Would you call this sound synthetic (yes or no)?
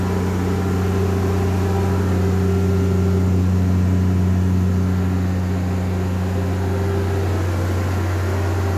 no